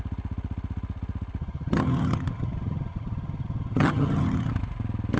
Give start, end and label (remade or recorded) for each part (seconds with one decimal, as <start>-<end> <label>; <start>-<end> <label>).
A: 0.0-1.4 recorded; 1.4-4.5 remade; 4.5-5.2 recorded